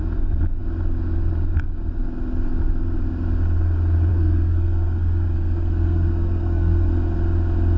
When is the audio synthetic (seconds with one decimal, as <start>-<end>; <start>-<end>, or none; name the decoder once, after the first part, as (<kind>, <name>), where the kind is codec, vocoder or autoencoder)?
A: 4.1-6.9 (codec, SNAC)